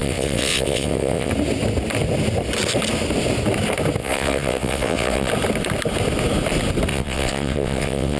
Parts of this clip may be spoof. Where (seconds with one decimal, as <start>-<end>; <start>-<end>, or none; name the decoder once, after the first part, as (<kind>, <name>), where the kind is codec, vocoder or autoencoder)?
0.0-1.3 (vocoder, WaveNeXt); 4.0-5.3; 6.9-8.2